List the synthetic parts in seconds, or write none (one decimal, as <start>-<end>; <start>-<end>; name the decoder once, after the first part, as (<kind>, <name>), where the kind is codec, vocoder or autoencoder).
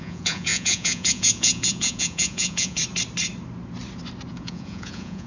0.0-2.8 (vocoder, Vocos); 4.3-5.3